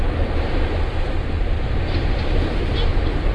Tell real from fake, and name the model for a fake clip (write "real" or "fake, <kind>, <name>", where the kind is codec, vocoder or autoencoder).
real